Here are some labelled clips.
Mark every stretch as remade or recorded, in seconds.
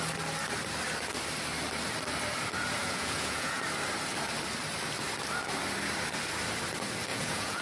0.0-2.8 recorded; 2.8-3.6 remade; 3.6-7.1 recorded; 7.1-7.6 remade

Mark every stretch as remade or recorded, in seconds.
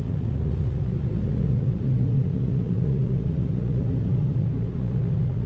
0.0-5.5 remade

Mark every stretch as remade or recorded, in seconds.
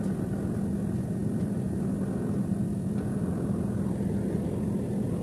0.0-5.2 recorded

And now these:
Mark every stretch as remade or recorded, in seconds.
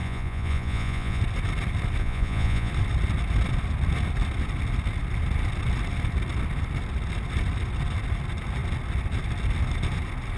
0.0-1.2 remade; 1.2-2.0 recorded; 2.0-2.7 remade; 2.7-10.4 recorded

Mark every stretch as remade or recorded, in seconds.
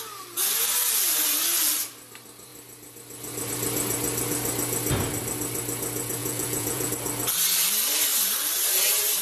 0.0-6.2 recorded; 6.2-6.9 remade; 6.9-9.2 recorded